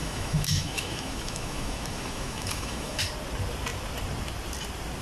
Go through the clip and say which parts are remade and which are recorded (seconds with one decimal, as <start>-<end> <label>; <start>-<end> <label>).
0.0-3.0 remade; 3.0-5.0 recorded